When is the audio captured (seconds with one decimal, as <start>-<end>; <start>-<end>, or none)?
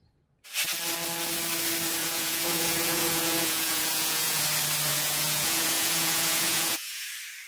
0.0-2.0; 4.4-4.9; 7.1-7.5